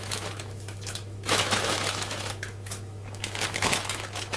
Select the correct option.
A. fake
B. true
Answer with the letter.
A